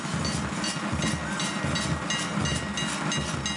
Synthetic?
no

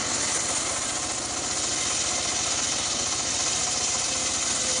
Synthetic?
no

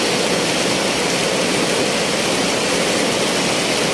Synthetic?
no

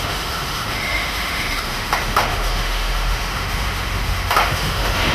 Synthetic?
yes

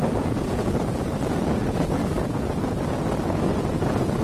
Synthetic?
yes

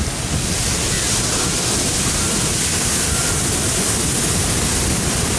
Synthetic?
no